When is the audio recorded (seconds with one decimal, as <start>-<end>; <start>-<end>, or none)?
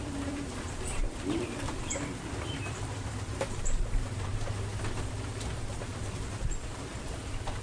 4.3-5.7